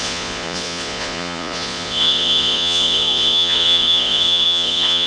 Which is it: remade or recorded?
remade